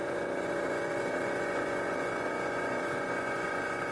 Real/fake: fake